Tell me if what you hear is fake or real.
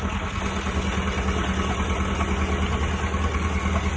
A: real